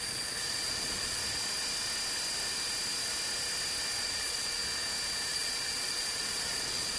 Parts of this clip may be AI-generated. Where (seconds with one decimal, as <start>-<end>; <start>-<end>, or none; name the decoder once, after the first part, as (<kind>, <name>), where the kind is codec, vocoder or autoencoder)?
0.0-1.2 (vocoder, Vocos); 4.0-4.6; 5.3-7.0